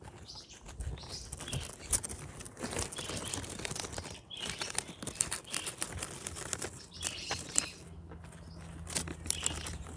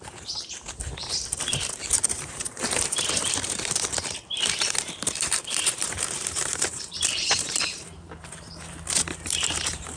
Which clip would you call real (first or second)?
first